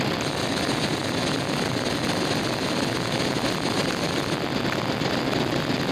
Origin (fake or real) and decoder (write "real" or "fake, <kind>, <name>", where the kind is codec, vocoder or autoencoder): real